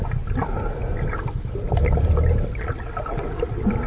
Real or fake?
real